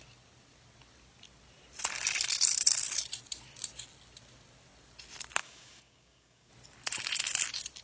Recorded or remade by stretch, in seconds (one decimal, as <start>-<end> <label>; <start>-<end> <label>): 0.0-5.4 recorded; 5.4-6.5 remade; 6.5-7.8 recorded